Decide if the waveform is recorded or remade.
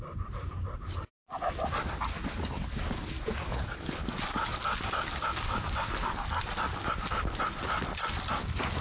recorded